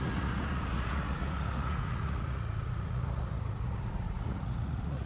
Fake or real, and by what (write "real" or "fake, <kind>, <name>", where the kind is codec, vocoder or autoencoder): fake, vocoder, Vocos